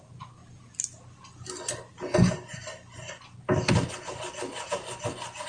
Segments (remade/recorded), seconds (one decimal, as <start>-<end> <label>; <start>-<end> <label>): 0.0-5.5 recorded